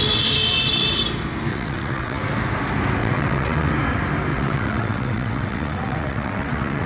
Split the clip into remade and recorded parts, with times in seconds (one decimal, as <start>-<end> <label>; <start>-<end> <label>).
0.0-1.5 recorded; 1.5-2.2 remade; 2.2-3.0 recorded; 3.0-3.7 remade; 3.7-4.3 recorded; 4.3-6.9 remade

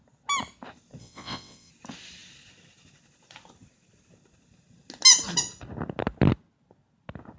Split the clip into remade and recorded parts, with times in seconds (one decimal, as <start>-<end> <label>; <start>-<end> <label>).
0.0-1.0 recorded; 1.0-1.7 remade; 1.7-7.4 recorded

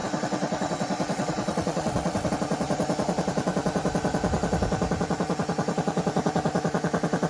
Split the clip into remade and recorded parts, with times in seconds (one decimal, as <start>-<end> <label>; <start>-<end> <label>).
0.0-2.3 remade; 2.3-7.3 recorded